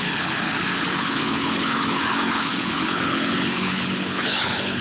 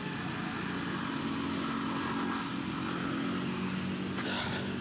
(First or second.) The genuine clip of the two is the second